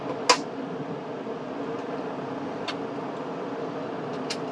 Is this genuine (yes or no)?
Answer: yes